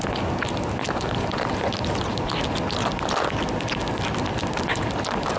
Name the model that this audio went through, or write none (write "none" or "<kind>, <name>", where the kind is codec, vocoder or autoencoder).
none